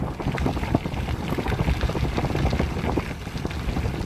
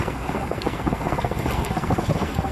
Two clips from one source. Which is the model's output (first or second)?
second